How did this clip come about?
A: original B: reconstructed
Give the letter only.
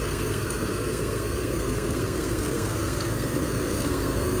B